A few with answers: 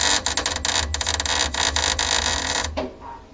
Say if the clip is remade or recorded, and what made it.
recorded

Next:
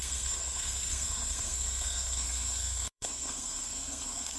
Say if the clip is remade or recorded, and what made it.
remade, codec, SNAC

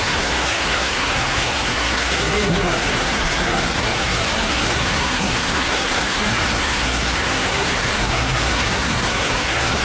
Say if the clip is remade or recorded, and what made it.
remade, codec, SNAC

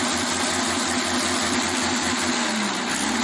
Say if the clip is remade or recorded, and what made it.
recorded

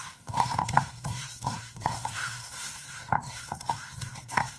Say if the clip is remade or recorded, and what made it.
remade, codec, SNAC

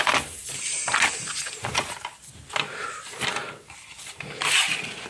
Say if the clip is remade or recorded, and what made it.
recorded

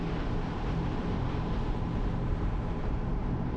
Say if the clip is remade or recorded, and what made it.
remade, vocoder, BigVGAN v2